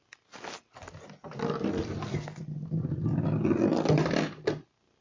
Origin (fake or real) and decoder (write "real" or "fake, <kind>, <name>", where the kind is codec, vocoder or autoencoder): real